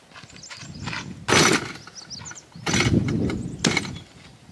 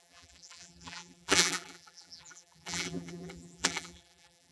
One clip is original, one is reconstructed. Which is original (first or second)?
first